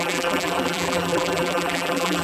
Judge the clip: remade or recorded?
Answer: remade